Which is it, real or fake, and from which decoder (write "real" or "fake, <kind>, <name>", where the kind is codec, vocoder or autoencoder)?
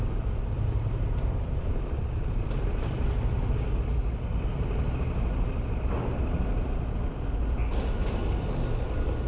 real